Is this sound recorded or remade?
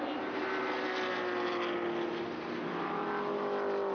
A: recorded